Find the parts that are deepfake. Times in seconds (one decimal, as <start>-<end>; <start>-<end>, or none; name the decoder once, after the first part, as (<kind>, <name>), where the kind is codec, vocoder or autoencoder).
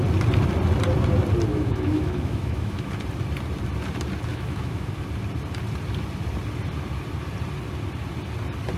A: 1.5-2.9 (autoencoder, DAC-VAE); 4.3-4.9